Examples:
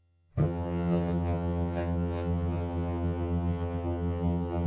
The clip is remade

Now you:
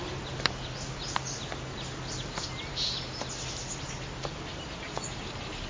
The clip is recorded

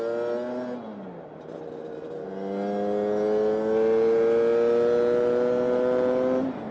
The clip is recorded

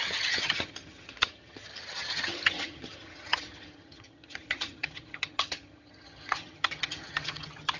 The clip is remade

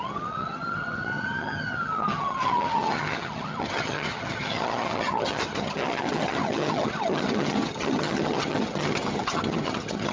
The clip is remade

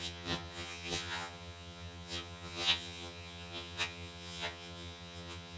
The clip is remade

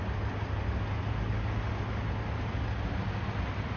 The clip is recorded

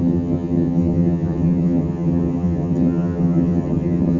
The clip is remade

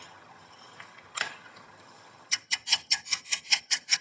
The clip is remade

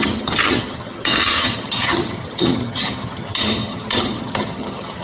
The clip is remade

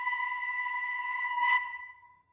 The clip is remade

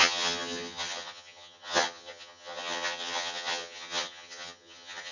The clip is remade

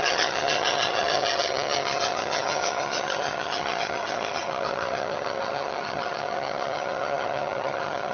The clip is remade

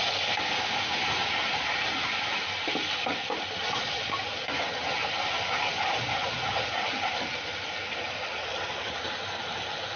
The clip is recorded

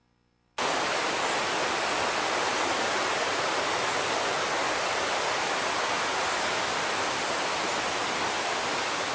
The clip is recorded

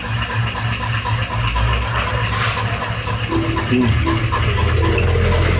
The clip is recorded